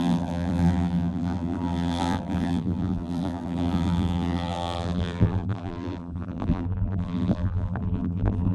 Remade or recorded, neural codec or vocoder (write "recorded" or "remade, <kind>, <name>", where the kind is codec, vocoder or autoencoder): remade, vocoder, BigVGAN v2